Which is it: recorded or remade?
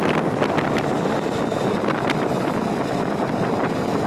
recorded